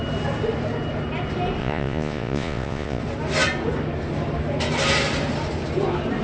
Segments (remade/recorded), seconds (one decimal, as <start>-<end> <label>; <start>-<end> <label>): 0.0-1.6 recorded; 1.6-3.0 remade; 3.0-6.2 recorded